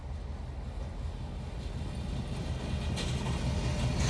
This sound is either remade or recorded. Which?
recorded